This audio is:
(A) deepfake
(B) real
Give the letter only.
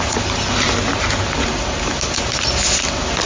B